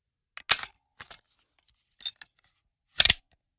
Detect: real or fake real